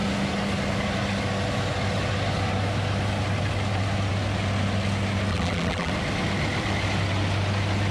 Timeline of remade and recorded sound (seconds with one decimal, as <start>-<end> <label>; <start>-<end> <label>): 0.0-5.3 recorded; 5.3-5.9 remade; 5.9-7.9 recorded